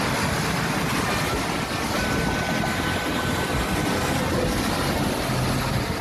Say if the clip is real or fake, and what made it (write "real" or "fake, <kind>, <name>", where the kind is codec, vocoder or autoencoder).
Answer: real